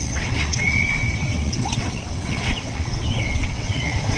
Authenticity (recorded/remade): remade